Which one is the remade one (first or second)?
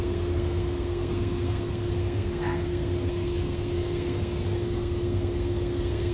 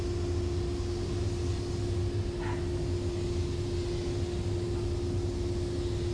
first